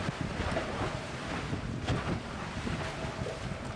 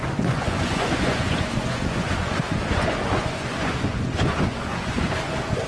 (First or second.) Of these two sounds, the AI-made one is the second